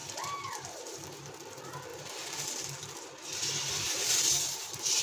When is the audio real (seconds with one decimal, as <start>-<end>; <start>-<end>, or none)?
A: 1.2-1.9